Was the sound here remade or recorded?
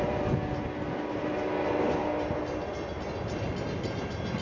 recorded